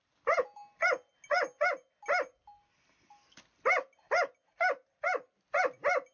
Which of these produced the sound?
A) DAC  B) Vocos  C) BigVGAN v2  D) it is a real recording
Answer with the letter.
D